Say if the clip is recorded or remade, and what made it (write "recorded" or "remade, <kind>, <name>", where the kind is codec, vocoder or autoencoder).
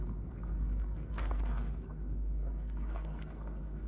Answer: remade, codec, SNAC